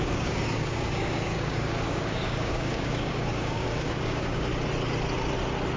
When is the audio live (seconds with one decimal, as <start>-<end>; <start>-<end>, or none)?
4.5-5.8